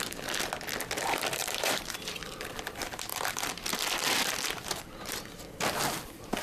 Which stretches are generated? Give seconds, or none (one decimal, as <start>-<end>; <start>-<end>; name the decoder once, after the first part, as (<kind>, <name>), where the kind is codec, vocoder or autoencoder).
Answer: 1.4-2.6 (vocoder, BigVGAN v2); 3.1-5.1